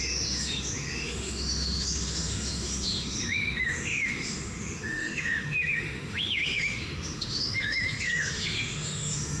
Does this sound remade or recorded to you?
remade